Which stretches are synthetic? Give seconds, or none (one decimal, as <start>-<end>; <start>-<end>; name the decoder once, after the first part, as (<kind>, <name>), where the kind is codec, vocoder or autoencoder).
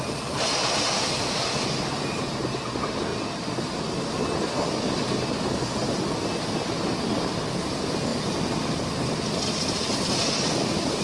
none